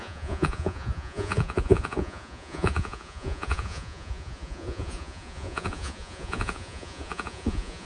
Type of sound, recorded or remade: remade